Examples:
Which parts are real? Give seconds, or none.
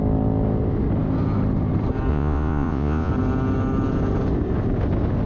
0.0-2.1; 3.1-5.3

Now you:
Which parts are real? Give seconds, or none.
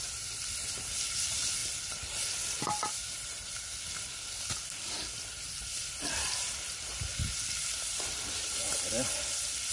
0.0-9.7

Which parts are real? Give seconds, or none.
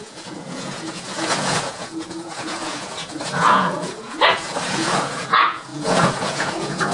none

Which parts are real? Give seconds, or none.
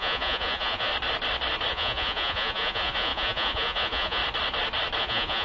0.9-1.7; 4.2-5.0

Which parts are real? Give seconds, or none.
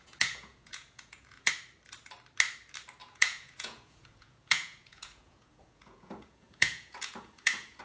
1.5-3.0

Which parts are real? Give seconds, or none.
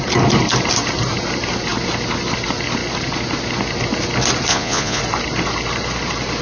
0.0-4.5; 5.0-6.4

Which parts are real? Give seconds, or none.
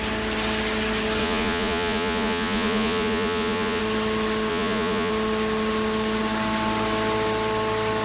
0.0-1.2; 3.8-4.5; 5.1-8.0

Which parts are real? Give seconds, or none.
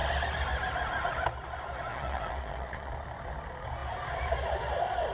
0.0-1.9; 2.9-5.1